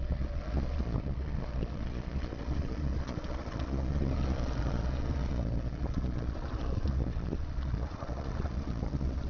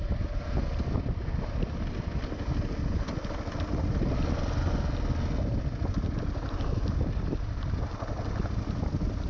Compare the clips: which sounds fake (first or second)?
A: first